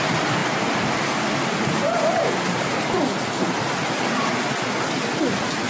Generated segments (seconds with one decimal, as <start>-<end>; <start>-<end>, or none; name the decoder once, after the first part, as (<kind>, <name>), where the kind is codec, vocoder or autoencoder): 0.4-2.9 (vocoder, BigVGAN v2)